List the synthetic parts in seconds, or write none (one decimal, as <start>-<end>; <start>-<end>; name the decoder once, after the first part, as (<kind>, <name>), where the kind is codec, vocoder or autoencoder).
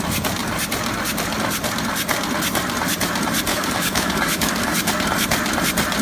3.5-4.9 (codec, DAC)